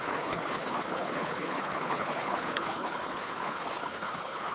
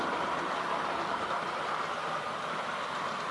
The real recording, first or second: second